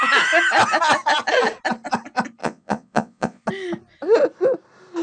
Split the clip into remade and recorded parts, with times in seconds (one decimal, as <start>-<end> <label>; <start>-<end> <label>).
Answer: 0.0-2.4 recorded; 2.4-3.4 remade; 3.4-5.0 recorded